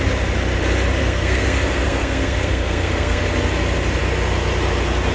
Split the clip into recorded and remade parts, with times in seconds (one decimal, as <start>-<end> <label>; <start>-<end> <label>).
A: 0.0-1.0 recorded; 1.0-3.2 remade; 3.2-5.1 recorded